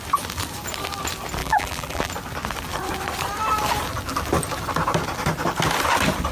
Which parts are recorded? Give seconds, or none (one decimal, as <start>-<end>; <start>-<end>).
0.0-1.4; 2.1-6.3